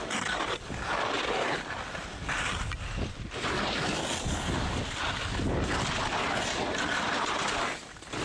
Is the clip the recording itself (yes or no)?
yes